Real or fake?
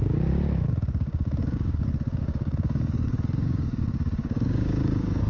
fake